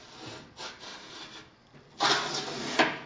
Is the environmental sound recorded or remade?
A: recorded